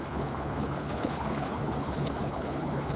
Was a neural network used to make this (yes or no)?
yes